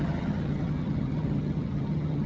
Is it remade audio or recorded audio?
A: remade